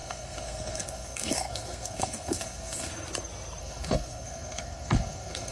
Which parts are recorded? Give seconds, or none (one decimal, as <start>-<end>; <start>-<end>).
2.9-3.6